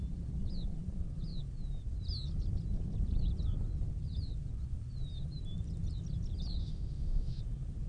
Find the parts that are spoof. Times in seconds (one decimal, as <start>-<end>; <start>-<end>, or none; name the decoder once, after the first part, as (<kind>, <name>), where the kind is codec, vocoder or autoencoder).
6.6-7.4 (autoencoder, DAC-VAE)